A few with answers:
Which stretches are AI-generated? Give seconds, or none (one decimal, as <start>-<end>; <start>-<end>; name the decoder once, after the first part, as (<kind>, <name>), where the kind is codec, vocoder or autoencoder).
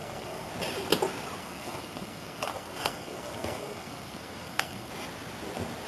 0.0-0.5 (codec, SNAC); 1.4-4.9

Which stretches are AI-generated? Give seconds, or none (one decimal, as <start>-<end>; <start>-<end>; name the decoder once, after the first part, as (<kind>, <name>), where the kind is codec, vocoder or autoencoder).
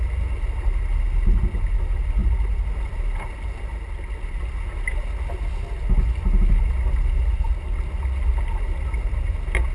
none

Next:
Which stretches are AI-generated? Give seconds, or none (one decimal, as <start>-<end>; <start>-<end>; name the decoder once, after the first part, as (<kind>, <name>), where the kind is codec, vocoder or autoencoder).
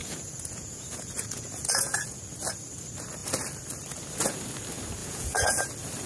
0.0-2.2 (vocoder, Vocos); 5.0-5.6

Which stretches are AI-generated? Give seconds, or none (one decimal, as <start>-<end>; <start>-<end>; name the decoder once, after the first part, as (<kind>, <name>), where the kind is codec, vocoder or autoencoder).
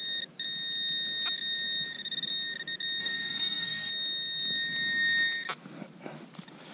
3.0-3.9 (codec, SNAC)